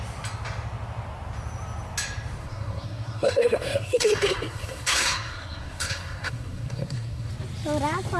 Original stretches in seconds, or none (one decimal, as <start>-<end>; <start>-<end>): 0.0-2.4; 7.3-8.2